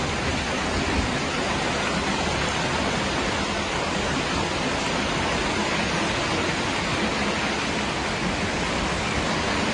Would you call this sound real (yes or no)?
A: yes